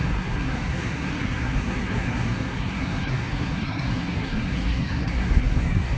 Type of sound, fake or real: fake